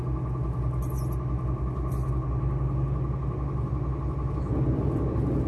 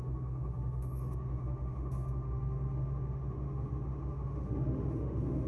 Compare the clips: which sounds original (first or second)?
first